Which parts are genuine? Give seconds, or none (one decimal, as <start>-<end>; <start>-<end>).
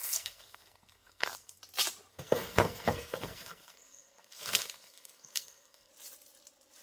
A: 1.6-2.1; 5.9-6.8